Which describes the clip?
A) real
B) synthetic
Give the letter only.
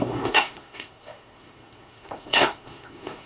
B